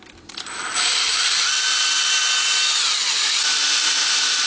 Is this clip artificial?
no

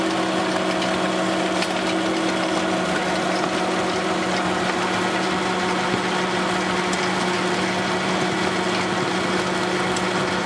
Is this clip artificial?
no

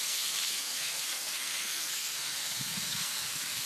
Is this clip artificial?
yes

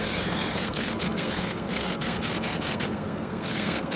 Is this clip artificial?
yes